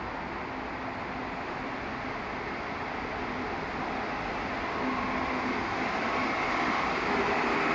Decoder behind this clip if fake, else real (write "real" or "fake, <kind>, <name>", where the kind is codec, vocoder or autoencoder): real